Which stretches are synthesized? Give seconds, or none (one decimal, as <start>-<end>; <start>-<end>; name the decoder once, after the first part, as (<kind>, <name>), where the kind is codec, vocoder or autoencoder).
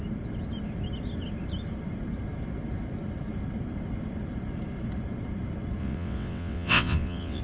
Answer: 5.8-7.4 (vocoder, WaveNeXt)